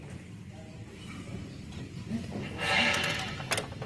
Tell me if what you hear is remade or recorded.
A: recorded